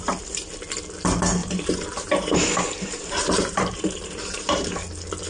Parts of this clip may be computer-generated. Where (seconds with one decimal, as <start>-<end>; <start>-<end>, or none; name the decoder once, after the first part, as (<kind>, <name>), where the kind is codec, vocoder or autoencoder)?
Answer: 1.4-4.6 (vocoder, BigVGAN v2)